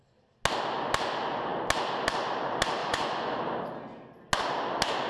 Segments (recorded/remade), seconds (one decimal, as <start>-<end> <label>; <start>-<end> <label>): 0.0-2.8 recorded; 2.8-3.4 remade; 3.4-5.1 recorded